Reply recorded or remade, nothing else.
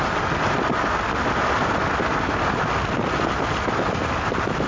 recorded